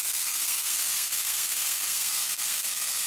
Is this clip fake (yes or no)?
yes